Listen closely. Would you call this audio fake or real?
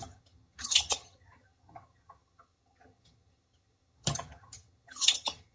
fake